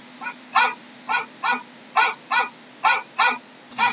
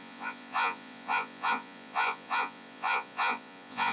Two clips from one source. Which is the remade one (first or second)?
second